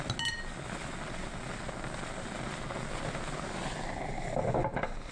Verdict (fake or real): real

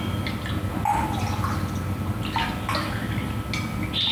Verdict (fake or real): real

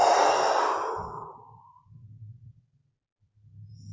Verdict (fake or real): real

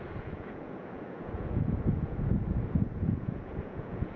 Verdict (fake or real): fake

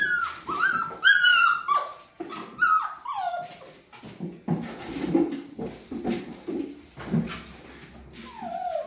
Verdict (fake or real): real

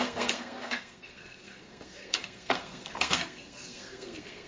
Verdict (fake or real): fake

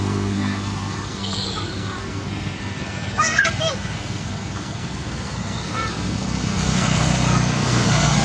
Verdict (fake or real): fake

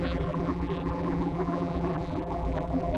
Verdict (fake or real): fake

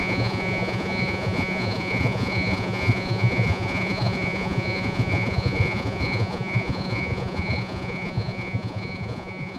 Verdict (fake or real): fake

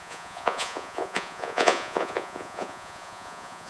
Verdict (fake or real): fake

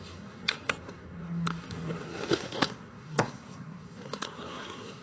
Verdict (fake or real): fake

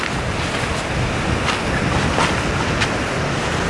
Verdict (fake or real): real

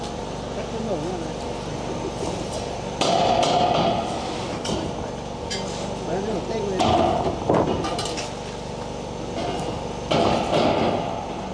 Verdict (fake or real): real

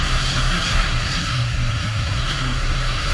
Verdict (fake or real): fake